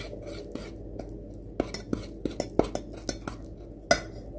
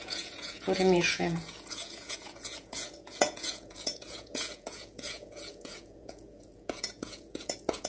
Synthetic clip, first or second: second